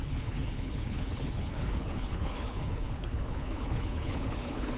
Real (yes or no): no